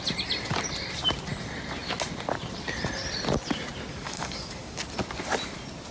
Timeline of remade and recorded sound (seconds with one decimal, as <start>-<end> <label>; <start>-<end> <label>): 0.0-3.9 recorded; 3.9-4.8 remade; 4.8-5.9 recorded